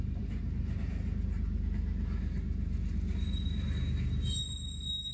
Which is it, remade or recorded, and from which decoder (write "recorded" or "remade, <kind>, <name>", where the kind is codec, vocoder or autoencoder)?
recorded